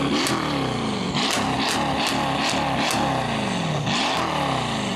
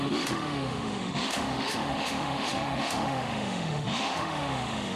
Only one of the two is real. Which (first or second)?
first